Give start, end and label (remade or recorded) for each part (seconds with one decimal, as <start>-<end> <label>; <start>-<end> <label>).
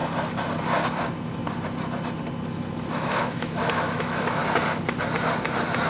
0.0-2.9 recorded; 2.9-4.4 remade; 4.4-5.9 recorded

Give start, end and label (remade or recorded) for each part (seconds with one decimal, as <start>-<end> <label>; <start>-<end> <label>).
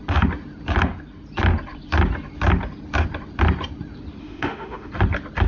0.0-4.2 recorded; 4.2-4.9 remade; 4.9-5.5 recorded